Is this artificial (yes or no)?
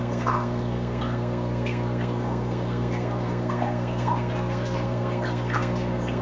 yes